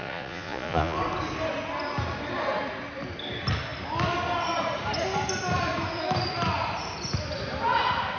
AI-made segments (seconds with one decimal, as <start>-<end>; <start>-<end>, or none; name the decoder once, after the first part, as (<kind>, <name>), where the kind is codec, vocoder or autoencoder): 0.0-1.0 (vocoder, Vocos)